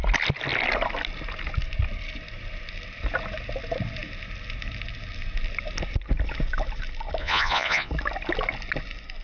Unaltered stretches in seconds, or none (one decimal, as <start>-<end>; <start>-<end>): 0.0-7.2; 7.9-9.2

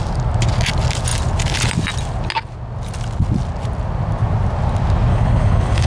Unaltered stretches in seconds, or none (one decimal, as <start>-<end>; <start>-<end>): 0.0-5.1

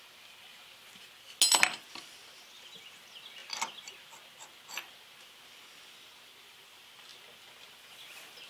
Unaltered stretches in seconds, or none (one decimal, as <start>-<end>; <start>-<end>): 0.0-8.5

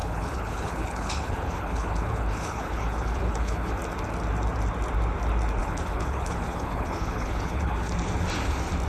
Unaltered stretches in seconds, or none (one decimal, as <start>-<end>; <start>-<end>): 3.7-5.6; 7.9-8.9

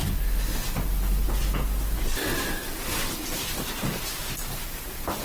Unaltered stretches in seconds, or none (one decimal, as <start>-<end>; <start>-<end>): 0.0-3.1